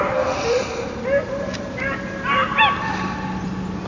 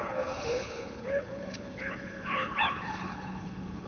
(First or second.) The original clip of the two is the first